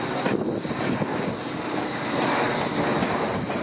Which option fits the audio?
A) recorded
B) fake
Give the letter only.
A